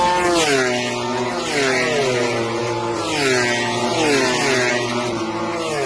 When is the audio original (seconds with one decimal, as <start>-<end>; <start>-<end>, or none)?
0.0-5.9